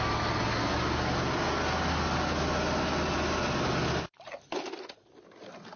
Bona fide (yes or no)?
yes